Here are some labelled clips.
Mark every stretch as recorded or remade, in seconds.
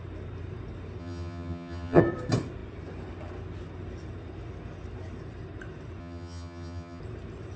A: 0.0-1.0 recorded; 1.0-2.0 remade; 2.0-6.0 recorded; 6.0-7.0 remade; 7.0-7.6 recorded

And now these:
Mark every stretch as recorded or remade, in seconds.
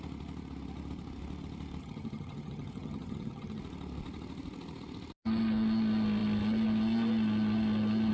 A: 0.0-1.8 recorded; 1.8-3.6 remade; 3.6-8.1 recorded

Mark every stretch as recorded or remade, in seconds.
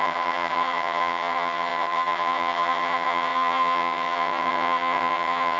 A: 0.0-5.6 remade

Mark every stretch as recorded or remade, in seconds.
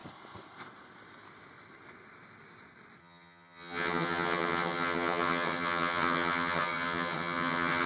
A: 0.0-3.0 recorded; 3.0-7.9 remade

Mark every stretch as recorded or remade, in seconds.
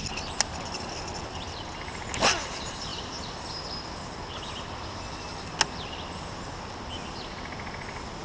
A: 0.0-8.2 recorded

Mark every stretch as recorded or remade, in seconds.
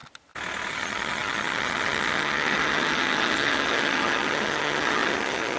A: 0.0-0.7 recorded; 0.7-5.6 remade